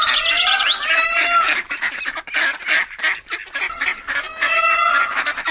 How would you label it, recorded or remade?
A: recorded